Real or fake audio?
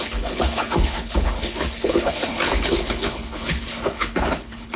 fake